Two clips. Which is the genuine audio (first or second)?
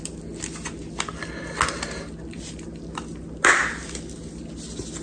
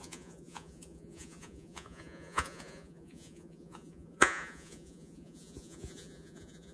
first